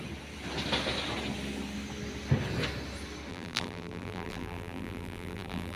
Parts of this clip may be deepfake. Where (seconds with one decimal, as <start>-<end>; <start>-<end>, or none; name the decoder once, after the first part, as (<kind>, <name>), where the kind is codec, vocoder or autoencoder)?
3.3-5.8 (vocoder, BigVGAN v2)